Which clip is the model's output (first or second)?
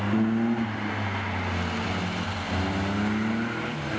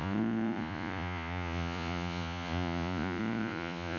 second